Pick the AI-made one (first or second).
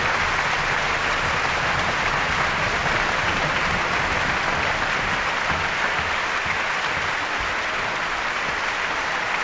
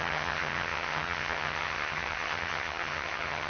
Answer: second